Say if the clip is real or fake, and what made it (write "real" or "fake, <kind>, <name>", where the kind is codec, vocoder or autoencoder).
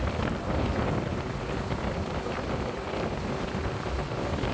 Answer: real